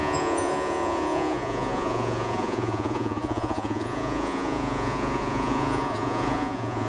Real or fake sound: fake